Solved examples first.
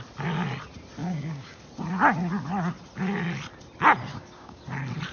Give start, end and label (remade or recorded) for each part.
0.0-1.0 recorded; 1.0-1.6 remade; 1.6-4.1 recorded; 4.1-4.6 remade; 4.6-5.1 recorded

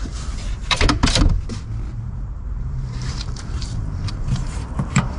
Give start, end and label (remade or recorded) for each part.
0.0-0.6 recorded; 0.6-1.3 remade; 1.3-1.9 recorded; 1.9-5.2 remade

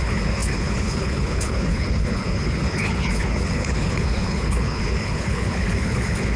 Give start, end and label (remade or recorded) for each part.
0.0-6.4 remade

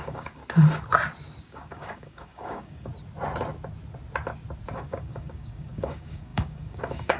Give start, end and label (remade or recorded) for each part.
0.0-0.4 remade; 0.4-1.4 recorded; 1.4-2.9 remade; 2.9-4.7 recorded; 4.7-7.2 remade

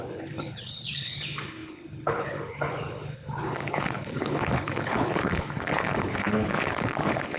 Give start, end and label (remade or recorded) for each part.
0.0-7.4 remade

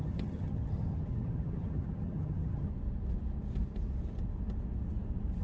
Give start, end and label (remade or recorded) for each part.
0.0-2.7 remade; 2.7-5.4 recorded

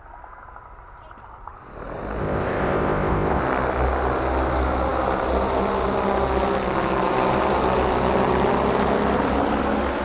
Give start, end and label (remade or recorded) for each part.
0.0-2.2 recorded; 2.2-3.4 remade; 3.4-10.0 recorded